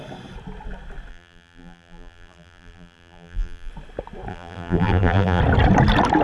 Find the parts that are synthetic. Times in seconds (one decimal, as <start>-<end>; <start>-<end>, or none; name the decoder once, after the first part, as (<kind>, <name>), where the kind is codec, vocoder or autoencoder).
1.1-3.7 (vocoder, BigVGAN v2); 4.3-5.4